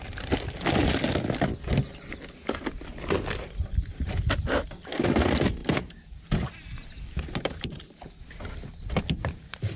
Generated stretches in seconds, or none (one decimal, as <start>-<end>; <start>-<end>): 5.6-8.5